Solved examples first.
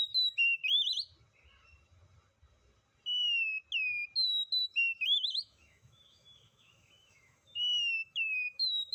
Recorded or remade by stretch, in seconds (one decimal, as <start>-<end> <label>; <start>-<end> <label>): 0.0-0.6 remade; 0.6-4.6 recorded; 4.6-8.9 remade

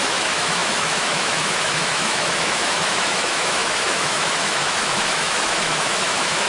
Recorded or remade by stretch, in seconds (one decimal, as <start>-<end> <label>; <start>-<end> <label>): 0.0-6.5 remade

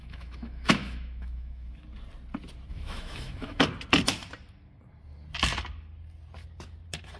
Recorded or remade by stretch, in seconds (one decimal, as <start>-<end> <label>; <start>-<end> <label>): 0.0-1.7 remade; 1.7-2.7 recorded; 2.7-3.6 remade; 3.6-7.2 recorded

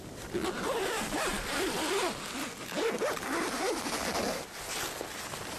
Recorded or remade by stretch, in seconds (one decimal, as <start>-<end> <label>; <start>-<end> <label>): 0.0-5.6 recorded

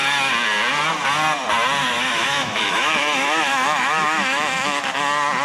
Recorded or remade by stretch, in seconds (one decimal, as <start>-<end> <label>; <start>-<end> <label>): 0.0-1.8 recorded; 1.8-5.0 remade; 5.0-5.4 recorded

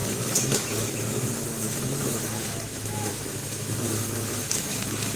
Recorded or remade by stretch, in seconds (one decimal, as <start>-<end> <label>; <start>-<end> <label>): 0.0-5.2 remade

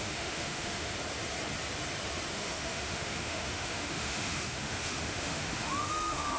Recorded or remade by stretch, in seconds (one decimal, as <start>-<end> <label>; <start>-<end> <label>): 0.0-0.9 remade; 0.9-2.3 recorded; 2.3-6.4 remade

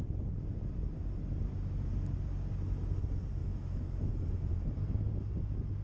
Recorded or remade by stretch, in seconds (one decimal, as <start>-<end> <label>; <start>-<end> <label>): 0.0-3.4 recorded; 3.4-4.1 remade; 4.1-5.8 recorded